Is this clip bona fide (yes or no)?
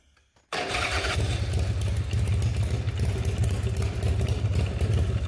yes